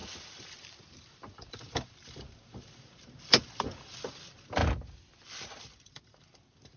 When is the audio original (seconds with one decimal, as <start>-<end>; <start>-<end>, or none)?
4.6-5.6

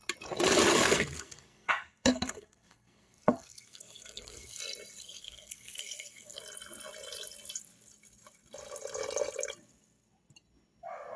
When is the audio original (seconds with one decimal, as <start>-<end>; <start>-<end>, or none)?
0.0-0.7; 4.6-5.0; 6.4-11.2

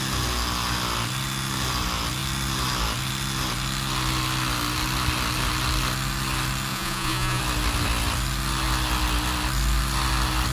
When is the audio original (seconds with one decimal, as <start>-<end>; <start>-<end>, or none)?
0.0-6.7; 7.4-10.5

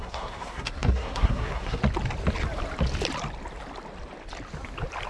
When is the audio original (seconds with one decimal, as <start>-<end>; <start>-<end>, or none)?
1.8-5.1